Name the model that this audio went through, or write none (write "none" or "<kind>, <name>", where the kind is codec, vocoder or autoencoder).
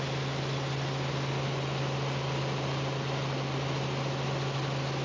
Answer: none